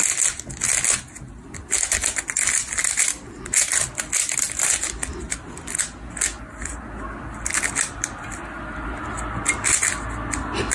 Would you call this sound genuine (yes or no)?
yes